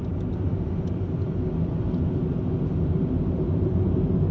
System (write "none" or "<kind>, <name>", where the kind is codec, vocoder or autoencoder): none